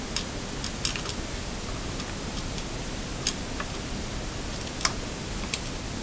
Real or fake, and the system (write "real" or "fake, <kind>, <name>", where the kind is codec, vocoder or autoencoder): real